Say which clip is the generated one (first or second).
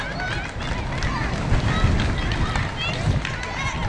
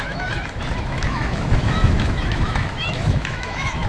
second